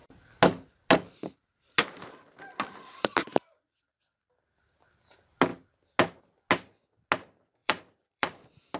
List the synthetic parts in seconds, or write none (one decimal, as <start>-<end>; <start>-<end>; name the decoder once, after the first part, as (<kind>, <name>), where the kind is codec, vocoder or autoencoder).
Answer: 3.3-4.6 (vocoder, BigVGAN v2); 7.6-8.4